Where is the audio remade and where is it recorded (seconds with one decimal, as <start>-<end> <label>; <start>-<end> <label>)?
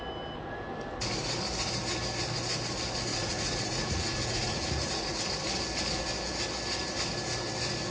0.0-3.1 recorded; 3.1-5.2 remade; 5.2-7.9 recorded